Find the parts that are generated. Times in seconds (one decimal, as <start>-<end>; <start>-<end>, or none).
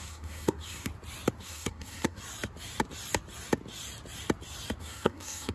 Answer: 0.0-0.9; 1.4-2.2; 4.8-5.5